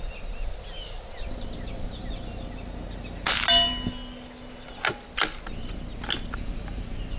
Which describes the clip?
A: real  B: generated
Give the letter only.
A